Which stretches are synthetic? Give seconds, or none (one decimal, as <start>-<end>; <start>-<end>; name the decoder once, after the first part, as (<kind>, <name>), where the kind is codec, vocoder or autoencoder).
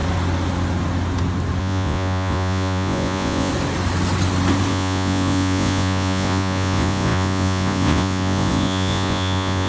1.6-3.5 (vocoder, Vocos); 4.7-9.7